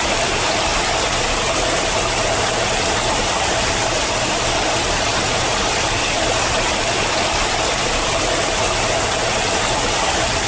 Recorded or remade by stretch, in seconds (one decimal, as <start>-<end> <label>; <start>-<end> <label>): 0.0-0.7 remade; 0.7-3.2 recorded; 3.2-10.5 remade